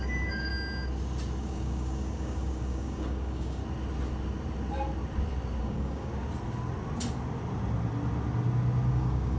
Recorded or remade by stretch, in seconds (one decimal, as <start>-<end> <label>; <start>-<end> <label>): 0.0-0.5 remade; 0.5-1.4 recorded; 1.4-3.6 remade; 3.6-5.6 recorded; 5.6-6.1 remade; 6.1-8.9 recorded; 8.9-9.4 remade